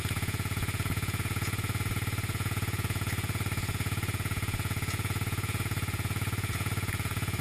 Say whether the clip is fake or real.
fake